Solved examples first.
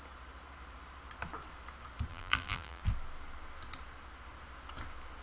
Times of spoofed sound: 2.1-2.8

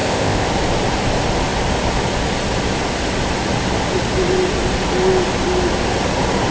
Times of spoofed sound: 0.0-0.5

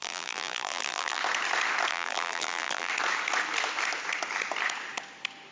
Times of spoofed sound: 0.0-1.2; 1.9-2.9

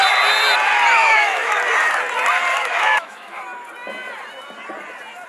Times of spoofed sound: 1.0-1.6; 2.5-3.4